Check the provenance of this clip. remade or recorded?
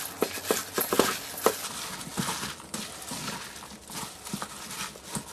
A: recorded